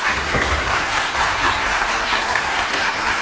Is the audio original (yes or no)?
no